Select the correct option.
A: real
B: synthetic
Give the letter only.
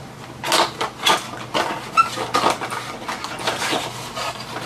A